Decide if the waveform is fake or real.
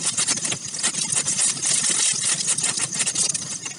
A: real